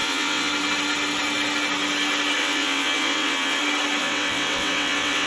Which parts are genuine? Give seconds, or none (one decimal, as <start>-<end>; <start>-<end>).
0.5-2.4; 3.6-4.0